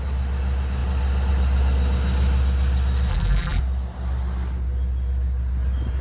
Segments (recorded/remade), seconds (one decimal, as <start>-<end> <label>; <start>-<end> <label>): 0.0-3.1 recorded; 3.1-3.6 remade; 3.6-6.0 recorded

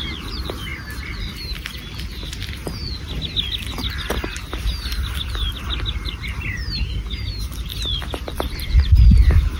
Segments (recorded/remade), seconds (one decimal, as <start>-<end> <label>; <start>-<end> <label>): 0.0-7.7 recorded; 7.7-9.6 remade

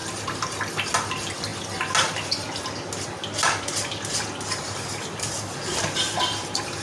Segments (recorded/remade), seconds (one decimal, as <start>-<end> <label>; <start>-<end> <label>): 0.0-6.8 recorded

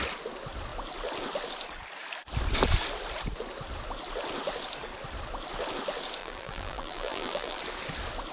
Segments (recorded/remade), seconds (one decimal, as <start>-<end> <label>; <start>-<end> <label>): 0.0-6.2 recorded; 6.2-7.6 remade; 7.6-8.3 recorded

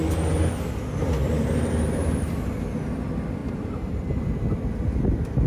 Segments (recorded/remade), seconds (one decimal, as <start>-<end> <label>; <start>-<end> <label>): 0.0-1.0 recorded; 1.0-2.3 remade; 2.3-3.4 recorded; 3.4-4.2 remade; 4.2-5.5 recorded

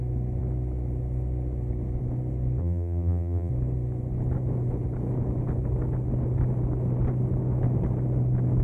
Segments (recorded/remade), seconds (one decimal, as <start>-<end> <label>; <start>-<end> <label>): 0.0-2.6 recorded; 2.6-3.5 remade; 3.5-8.6 recorded

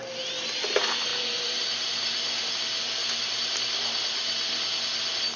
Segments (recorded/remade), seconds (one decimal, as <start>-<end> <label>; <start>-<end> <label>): 0.0-1.1 recorded; 1.1-2.6 remade; 2.6-3.0 recorded; 3.0-3.6 remade; 3.6-5.4 recorded